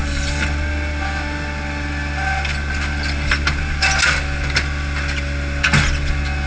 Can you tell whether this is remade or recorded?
recorded